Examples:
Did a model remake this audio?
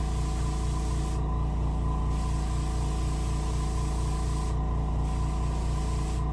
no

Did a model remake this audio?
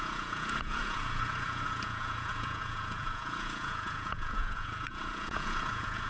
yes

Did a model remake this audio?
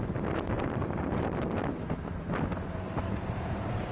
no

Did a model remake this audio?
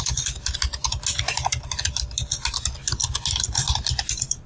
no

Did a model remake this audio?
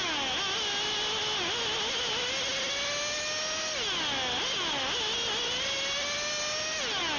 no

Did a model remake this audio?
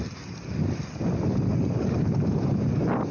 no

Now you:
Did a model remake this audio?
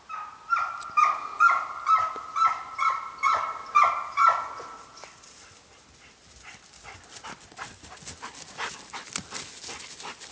no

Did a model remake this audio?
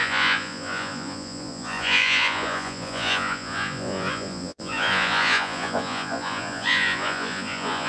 yes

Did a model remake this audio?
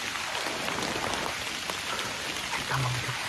no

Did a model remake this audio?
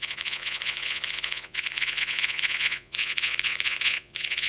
yes